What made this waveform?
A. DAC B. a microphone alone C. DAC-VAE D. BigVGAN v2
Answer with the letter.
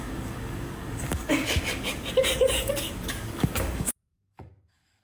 A